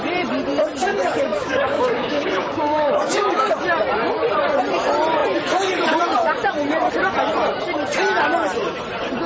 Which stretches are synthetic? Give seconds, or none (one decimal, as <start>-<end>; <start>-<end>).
0.8-3.5